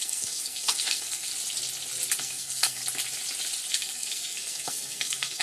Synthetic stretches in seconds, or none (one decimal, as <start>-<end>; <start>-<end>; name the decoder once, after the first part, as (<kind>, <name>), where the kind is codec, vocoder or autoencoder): 0.0-1.3 (codec, SNAC); 2.2-2.8; 3.7-5.4